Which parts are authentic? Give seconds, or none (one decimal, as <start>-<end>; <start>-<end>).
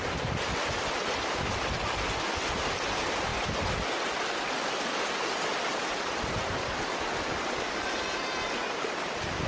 0.0-9.5